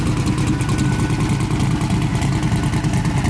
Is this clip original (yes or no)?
yes